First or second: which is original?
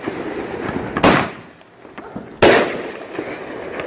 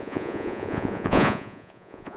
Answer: first